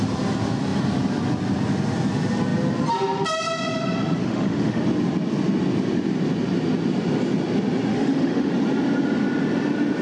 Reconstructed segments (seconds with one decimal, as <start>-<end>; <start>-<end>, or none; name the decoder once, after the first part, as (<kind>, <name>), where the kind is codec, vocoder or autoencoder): 4.2-4.8 (autoencoder, DAC-VAE); 7.9-8.5